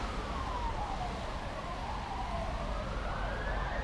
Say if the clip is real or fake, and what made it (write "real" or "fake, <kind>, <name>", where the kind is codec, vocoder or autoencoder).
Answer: real